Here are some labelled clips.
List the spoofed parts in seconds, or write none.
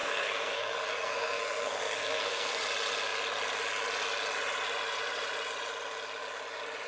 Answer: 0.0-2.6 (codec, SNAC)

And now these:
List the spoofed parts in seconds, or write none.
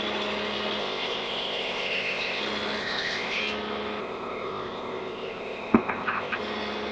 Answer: 0.8-2.4 (codec, ZipCodec); 2.8-3.4; 4.0-6.4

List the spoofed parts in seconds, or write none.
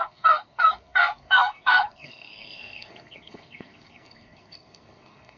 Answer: 0.0-5.4 (codec, SNAC)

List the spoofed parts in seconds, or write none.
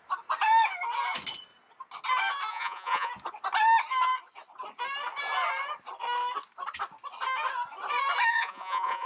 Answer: 2.5-3.1 (vocoder, Vocos); 8.3-9.1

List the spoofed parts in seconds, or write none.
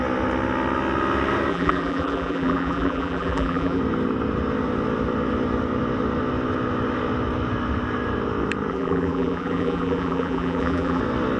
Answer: 1.5-3.8 (vocoder, BigVGAN v2); 8.7-11.0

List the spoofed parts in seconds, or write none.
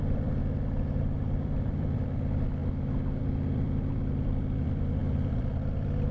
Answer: 0.0-0.4 (vocoder, BigVGAN v2); 1.0-2.6; 3.2-6.1